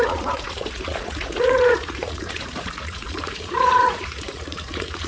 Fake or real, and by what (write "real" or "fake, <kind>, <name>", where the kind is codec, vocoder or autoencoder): fake, vocoder, Vocos